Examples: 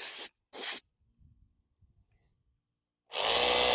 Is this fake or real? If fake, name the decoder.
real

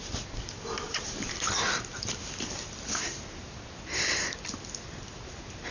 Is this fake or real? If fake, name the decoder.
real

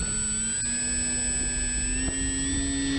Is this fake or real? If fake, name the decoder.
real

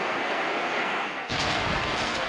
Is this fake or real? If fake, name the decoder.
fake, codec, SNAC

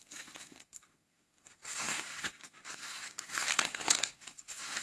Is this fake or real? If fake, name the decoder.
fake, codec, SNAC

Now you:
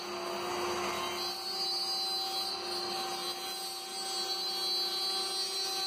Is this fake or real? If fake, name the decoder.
real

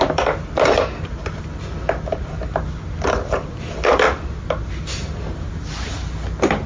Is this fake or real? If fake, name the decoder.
real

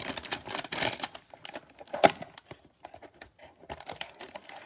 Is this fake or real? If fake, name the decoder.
real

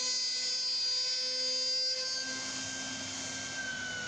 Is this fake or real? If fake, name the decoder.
real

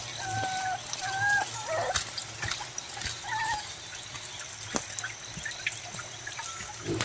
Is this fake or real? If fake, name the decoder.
real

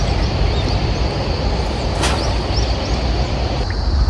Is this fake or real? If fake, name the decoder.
real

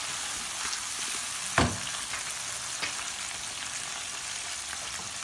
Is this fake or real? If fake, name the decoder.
real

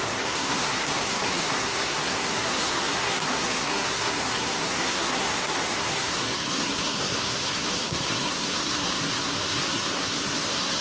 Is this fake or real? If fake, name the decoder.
fake, codec, SNAC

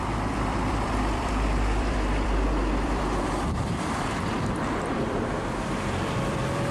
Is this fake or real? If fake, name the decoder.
fake, vocoder, BigVGAN v2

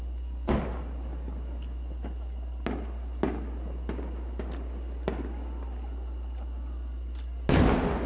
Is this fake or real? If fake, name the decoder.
real